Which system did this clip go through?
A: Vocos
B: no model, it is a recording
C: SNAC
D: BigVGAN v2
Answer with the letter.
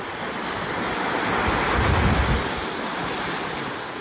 B